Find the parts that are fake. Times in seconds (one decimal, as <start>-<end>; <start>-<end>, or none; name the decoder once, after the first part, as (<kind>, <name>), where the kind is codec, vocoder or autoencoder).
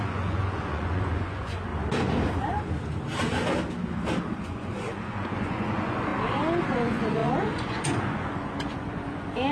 0.0-1.7 (vocoder, Vocos); 4.4-6.1; 6.7-9.5